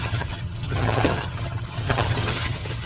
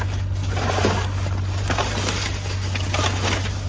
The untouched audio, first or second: second